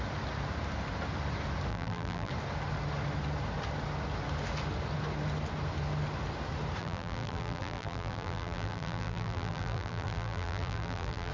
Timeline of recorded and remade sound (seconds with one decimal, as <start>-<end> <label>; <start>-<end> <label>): 0.0-1.7 recorded; 1.7-2.3 remade; 2.3-6.8 recorded; 6.8-11.3 remade